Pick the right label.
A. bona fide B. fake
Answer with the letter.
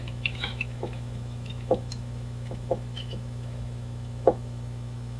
B